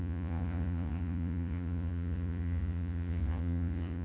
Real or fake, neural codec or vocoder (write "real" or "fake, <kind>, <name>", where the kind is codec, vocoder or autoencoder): fake, vocoder, Vocos